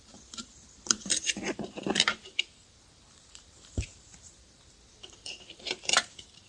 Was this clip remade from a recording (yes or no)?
yes